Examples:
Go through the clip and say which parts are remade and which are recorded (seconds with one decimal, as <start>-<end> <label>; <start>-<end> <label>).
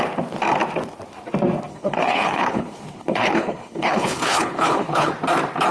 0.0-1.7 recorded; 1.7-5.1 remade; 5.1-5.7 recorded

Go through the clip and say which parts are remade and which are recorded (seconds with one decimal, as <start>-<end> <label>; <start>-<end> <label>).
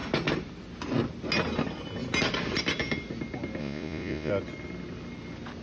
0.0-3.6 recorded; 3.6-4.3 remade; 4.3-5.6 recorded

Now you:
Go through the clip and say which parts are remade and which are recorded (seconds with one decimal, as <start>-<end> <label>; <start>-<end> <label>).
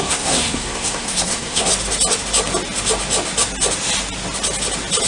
0.0-1.7 remade; 1.7-5.1 recorded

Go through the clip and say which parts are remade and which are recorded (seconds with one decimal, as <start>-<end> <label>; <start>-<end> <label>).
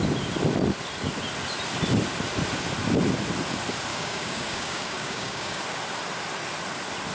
0.0-3.9 recorded; 3.9-5.6 remade; 5.6-7.1 recorded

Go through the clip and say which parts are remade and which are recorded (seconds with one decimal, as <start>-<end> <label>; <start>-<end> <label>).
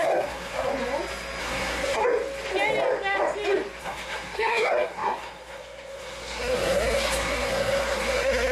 0.0-0.7 remade; 0.7-1.4 recorded; 1.4-2.0 remade; 2.0-3.8 recorded; 3.8-8.5 remade